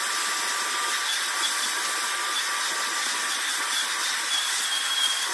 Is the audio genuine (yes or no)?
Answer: yes